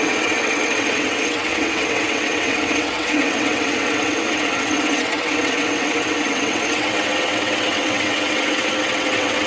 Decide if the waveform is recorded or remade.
remade